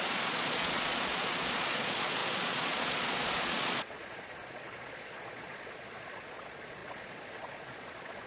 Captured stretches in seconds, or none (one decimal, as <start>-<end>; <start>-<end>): none